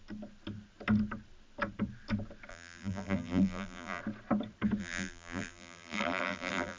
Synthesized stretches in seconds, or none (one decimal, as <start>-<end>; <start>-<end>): 2.5-4.0; 4.8-6.8